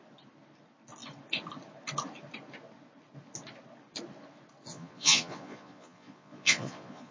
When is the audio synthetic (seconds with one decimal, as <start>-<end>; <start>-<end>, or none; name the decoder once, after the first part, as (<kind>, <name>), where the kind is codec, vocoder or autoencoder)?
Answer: 4.7-7.1 (vocoder, Vocos)